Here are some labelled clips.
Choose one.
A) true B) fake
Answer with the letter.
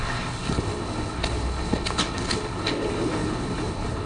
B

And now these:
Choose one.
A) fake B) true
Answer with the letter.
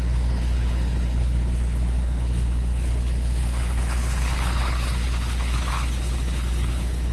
A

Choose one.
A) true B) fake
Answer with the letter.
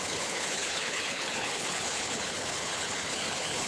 B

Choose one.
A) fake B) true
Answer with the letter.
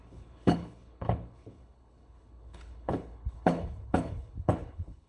A